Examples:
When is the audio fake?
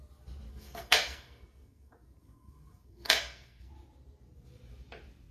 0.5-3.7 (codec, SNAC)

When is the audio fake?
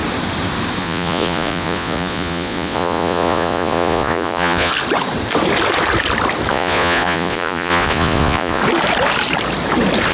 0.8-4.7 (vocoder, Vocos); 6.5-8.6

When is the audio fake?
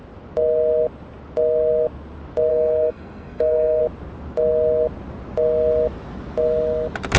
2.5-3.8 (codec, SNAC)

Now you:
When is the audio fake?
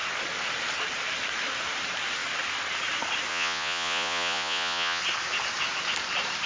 3.3-5.0 (vocoder, Vocos)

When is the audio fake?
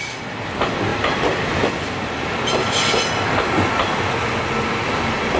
0.9-1.7 (vocoder, BigVGAN v2)